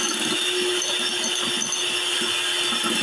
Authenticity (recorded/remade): recorded